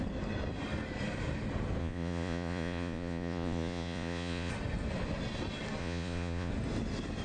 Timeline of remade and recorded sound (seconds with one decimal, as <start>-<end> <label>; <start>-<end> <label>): 0.0-1.8 recorded; 1.8-4.5 remade; 4.5-5.8 recorded; 5.8-6.5 remade; 6.5-7.2 recorded